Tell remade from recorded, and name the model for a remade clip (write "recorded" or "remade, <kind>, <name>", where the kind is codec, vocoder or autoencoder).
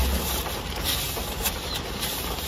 recorded